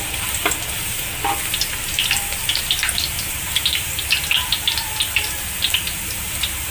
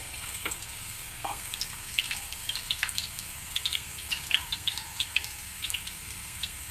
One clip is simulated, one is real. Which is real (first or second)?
first